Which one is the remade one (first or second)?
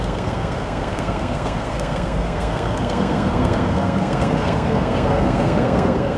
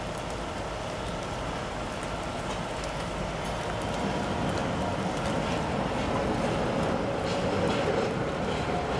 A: first